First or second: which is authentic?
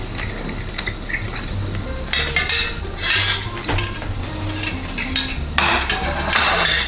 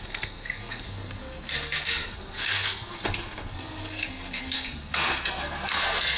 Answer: first